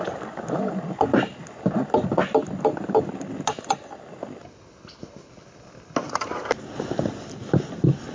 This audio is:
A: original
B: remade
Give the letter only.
A